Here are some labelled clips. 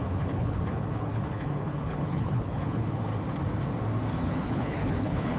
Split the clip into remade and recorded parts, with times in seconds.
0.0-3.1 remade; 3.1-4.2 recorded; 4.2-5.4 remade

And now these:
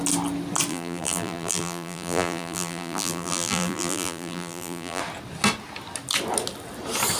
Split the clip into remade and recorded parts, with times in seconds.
0.0-0.7 recorded; 0.7-5.0 remade; 5.0-7.2 recorded

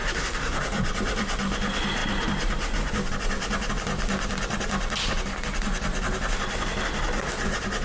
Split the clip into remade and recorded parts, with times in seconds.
0.0-0.6 remade; 0.6-7.8 recorded

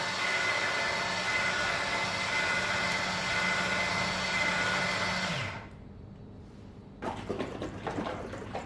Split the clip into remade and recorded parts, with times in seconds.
0.0-8.7 recorded